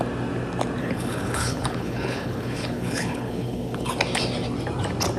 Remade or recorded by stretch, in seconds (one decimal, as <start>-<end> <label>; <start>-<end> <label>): 0.0-0.8 recorded; 0.8-3.9 remade; 3.9-5.2 recorded